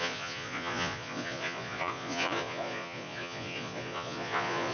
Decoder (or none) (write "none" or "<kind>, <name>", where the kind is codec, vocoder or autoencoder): vocoder, Vocos